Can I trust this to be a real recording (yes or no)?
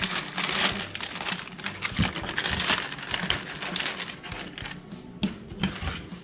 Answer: yes